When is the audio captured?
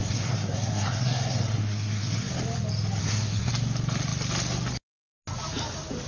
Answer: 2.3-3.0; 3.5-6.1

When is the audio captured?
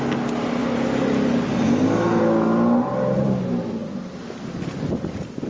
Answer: 0.0-5.5